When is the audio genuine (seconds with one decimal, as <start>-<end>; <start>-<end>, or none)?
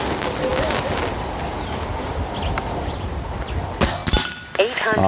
0.0-5.1